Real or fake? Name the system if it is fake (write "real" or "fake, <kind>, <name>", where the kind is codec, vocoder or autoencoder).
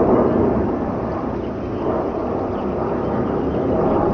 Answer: real